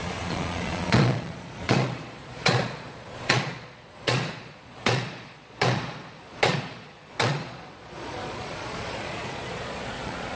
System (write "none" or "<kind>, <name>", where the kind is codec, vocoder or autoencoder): vocoder, Vocos